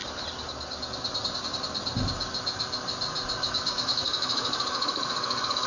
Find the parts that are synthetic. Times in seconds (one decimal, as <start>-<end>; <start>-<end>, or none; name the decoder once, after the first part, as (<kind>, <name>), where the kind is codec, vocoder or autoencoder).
3.4-5.7 (autoencoder, DAC-VAE)